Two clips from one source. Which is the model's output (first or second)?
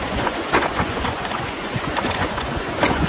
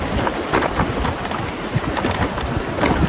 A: first